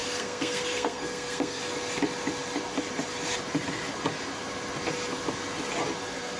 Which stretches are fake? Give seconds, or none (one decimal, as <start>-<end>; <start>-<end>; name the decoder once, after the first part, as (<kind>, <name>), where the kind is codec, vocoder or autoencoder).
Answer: 0.0-1.6 (codec, SNAC)